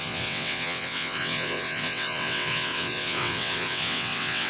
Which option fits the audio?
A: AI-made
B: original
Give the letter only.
A